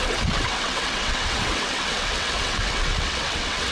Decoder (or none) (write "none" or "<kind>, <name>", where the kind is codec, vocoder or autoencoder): vocoder, WaveNeXt